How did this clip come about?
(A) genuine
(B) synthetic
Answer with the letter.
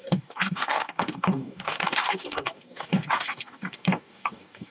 B